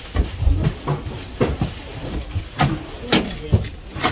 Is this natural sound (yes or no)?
yes